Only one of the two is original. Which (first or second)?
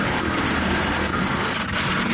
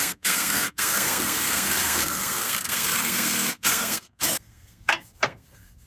first